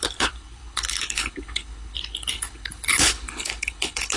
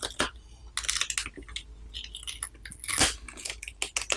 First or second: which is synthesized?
first